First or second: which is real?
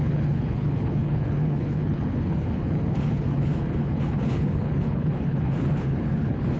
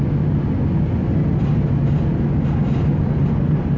second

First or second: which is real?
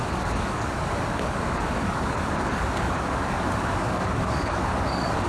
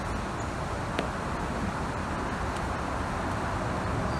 second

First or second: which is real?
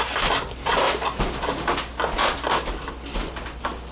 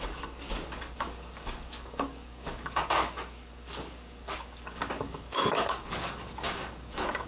first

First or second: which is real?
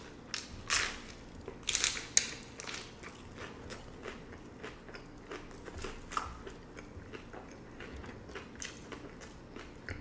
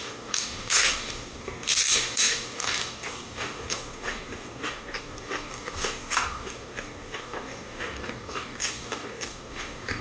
first